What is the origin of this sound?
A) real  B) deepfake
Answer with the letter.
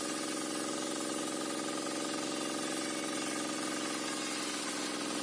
A